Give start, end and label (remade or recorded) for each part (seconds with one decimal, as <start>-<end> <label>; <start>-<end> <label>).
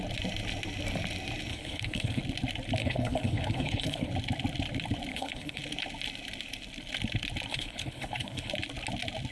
0.0-1.5 recorded; 1.5-2.2 remade; 2.2-2.8 recorded; 2.8-4.1 remade; 4.1-5.1 recorded; 5.1-5.6 remade; 5.6-7.5 recorded; 7.5-8.5 remade; 8.5-9.3 recorded